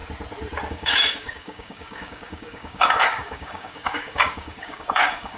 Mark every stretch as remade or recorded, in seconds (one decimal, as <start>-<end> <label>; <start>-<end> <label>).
0.0-0.7 recorded; 0.7-5.4 remade